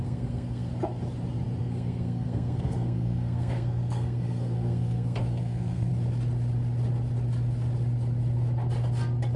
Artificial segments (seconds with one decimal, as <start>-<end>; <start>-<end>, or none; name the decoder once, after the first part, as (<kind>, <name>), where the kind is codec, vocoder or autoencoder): 0.0-0.7 (codec, SNAC); 1.6-5.9